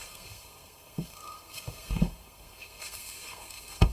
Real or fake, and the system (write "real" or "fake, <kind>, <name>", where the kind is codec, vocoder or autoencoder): fake, codec, SNAC